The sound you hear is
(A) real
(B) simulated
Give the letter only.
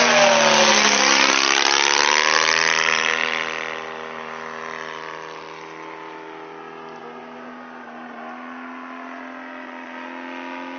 A